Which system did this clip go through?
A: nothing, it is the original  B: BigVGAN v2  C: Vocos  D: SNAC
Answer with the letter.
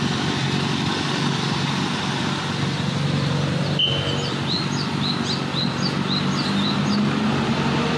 A